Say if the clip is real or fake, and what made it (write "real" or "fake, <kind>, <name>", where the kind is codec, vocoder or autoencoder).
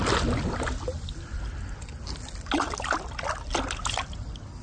real